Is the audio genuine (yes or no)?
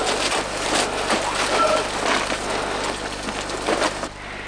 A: yes